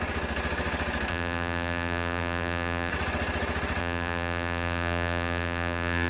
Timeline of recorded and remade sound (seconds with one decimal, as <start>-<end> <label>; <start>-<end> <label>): 0.0-1.1 recorded; 1.1-2.9 remade; 2.9-3.8 recorded; 3.8-6.1 remade